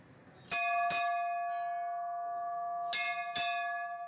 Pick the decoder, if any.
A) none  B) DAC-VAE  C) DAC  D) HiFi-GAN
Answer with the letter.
A